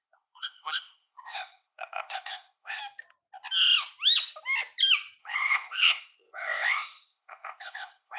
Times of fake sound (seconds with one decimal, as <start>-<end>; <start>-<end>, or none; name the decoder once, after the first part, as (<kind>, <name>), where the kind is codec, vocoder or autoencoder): 0.0-2.8 (codec, ZipCodec); 5.2-8.2